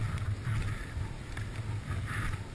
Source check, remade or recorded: recorded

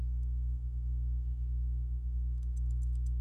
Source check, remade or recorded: remade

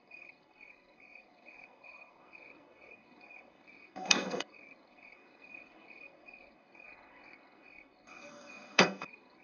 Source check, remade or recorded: remade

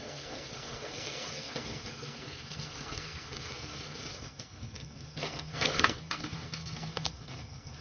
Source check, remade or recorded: remade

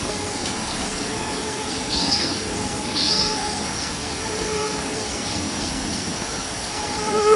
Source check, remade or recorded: remade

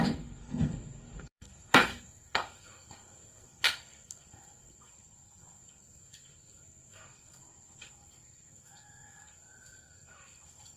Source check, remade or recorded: remade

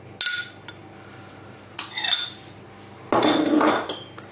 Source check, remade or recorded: recorded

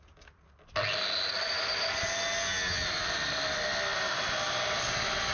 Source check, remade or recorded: recorded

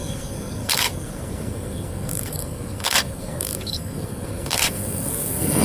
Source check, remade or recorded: remade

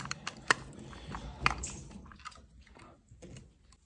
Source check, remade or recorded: recorded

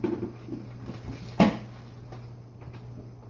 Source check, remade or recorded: recorded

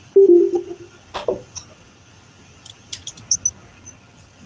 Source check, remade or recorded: recorded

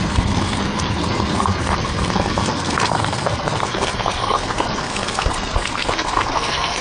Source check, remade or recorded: remade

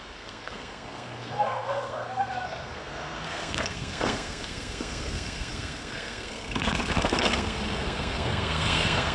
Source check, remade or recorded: remade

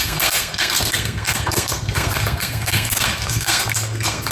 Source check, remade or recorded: remade